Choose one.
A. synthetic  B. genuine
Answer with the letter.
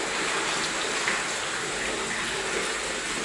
B